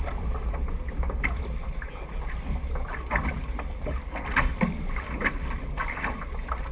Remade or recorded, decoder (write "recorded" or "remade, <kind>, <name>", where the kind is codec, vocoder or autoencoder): recorded